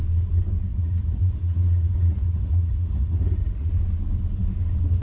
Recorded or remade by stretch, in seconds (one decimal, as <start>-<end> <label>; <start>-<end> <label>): 0.0-0.7 recorded; 0.7-3.7 remade; 3.7-5.0 recorded